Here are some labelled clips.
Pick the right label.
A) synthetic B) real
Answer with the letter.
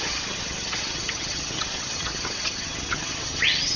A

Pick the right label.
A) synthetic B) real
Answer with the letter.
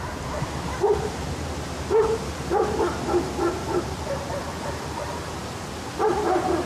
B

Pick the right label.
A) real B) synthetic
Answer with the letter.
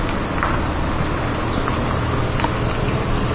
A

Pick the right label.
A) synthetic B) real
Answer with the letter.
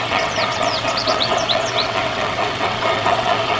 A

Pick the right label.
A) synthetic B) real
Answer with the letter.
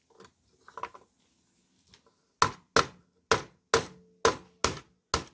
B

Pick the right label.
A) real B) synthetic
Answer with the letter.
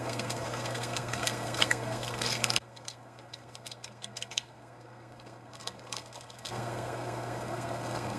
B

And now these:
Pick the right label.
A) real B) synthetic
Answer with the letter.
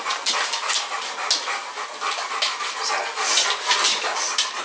A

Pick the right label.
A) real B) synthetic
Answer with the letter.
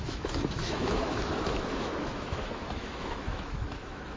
B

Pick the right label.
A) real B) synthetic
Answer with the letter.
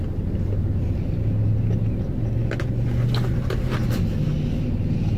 A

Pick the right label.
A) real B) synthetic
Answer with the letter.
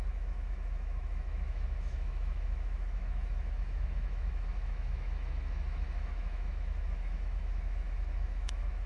B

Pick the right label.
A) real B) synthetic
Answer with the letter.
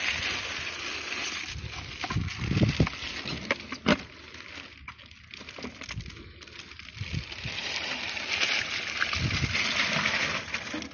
A